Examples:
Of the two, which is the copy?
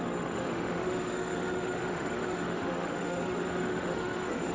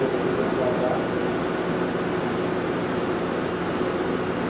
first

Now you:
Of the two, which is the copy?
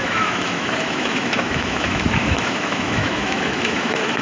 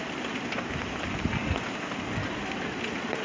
first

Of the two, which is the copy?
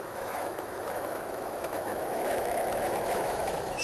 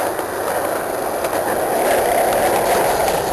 first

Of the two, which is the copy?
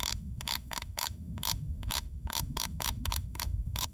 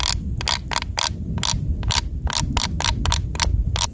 first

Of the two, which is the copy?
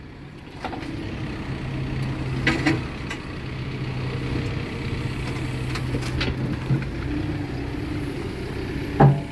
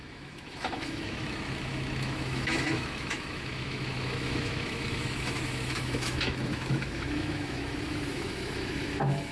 second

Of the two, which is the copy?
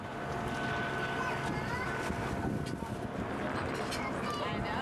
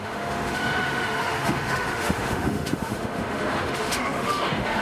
second